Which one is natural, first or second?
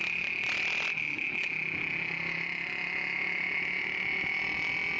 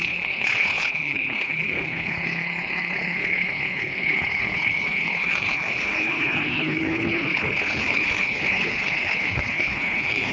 first